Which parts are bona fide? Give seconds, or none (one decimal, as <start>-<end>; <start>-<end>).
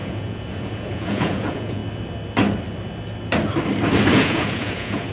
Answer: 1.8-4.1